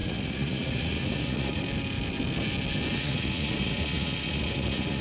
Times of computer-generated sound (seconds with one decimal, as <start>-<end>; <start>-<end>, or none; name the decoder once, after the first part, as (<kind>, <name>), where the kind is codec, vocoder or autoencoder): 0.0-1.6 (vocoder, Vocos); 2.9-5.0